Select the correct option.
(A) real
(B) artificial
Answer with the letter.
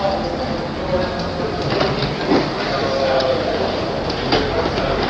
A